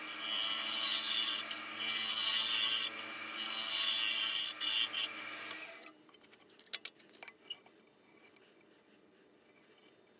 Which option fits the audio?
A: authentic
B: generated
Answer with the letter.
A